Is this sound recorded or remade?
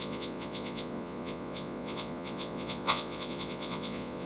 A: remade